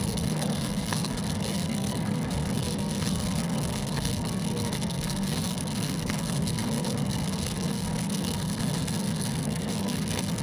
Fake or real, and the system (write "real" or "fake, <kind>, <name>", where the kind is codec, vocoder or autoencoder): fake, codec, SNAC